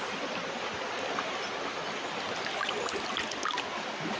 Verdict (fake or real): real